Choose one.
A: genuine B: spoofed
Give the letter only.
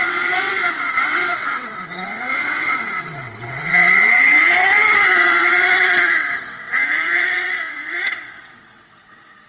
B